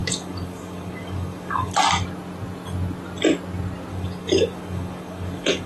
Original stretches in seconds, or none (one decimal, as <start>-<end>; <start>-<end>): 1.8-3.9